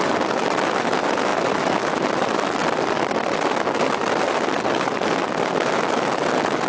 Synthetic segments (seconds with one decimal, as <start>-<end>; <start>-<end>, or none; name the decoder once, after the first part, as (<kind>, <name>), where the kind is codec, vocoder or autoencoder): none